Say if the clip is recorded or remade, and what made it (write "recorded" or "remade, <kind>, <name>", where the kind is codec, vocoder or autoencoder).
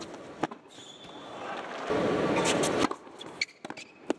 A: recorded